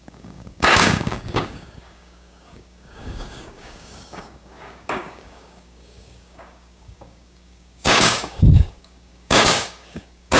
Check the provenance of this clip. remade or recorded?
remade